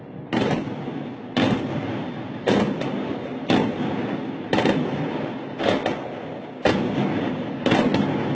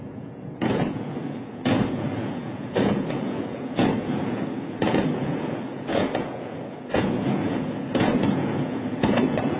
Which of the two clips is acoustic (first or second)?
first